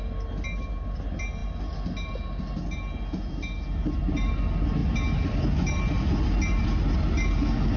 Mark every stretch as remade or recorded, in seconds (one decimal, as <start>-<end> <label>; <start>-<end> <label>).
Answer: 0.0-7.8 recorded